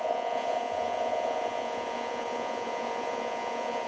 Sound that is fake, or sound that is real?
fake